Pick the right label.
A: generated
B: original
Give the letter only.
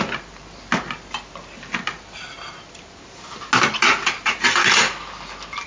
B